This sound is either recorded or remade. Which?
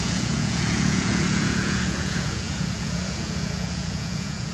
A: remade